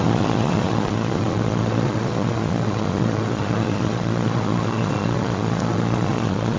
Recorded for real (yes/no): no